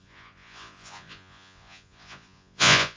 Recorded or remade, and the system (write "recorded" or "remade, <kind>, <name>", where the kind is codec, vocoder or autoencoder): remade, vocoder, Vocos